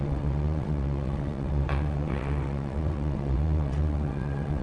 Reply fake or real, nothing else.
fake